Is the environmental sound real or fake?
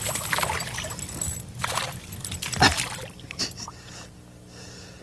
real